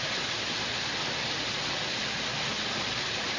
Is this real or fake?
real